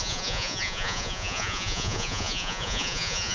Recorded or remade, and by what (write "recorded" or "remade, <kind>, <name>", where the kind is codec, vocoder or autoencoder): remade, vocoder, Vocos